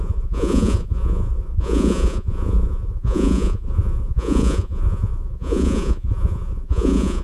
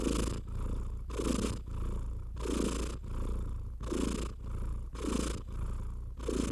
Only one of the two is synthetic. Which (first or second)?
first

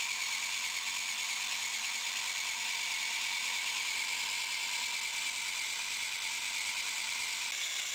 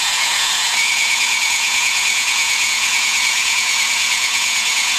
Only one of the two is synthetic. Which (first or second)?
second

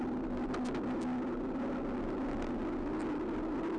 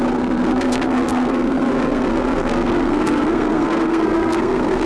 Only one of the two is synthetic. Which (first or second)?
second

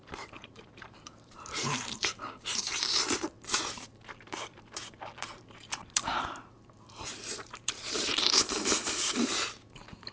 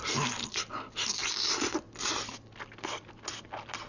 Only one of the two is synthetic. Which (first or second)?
first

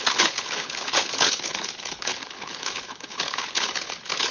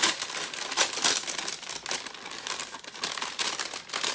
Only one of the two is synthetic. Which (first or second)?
first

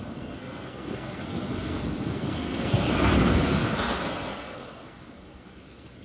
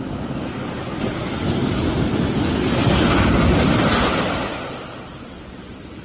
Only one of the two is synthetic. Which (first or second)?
first